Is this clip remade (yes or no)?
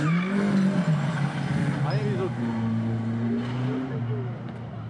no